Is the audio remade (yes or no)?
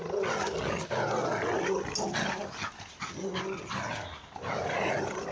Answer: no